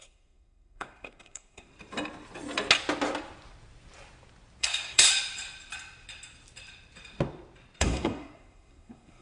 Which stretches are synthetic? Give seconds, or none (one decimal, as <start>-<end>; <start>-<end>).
0.0-1.7; 4.6-5.1; 7.8-9.2